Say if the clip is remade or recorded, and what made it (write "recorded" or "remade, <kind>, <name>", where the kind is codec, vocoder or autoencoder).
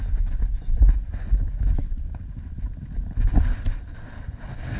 recorded